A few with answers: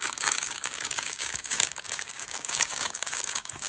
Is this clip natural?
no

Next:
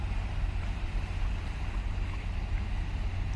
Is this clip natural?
yes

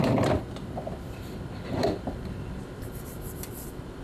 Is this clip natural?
no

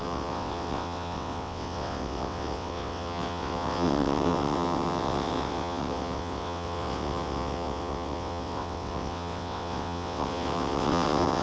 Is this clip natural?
no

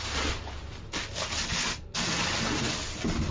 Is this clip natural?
yes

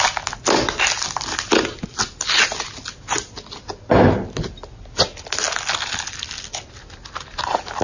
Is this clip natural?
yes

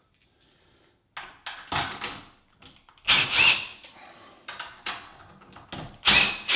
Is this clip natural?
yes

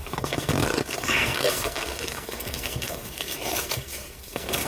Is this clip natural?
no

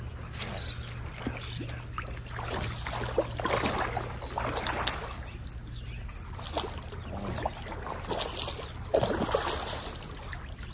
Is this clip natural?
yes